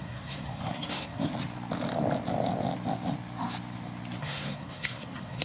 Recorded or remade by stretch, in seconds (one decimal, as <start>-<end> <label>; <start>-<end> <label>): 0.0-1.3 remade; 1.3-4.2 recorded; 4.2-5.4 remade